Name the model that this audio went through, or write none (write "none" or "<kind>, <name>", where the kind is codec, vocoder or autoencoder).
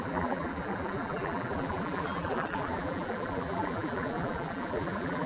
vocoder, BigVGAN v2